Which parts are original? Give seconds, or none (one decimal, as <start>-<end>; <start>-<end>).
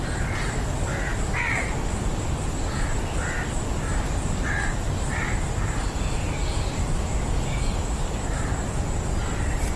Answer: 0.0-9.8